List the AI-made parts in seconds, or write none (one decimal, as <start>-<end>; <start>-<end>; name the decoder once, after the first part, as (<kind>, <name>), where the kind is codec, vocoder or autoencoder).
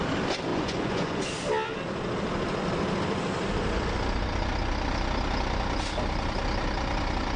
0.5-1.2 (vocoder, Vocos)